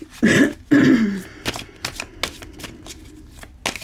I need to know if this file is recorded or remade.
recorded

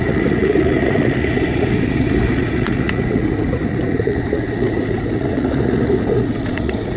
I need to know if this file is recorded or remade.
remade